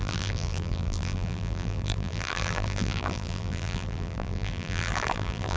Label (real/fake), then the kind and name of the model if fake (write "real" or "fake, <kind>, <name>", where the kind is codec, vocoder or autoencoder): fake, vocoder, BigVGAN v2